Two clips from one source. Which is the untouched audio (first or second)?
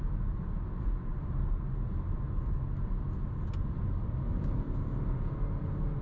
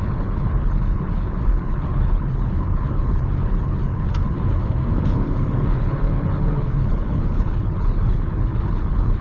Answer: first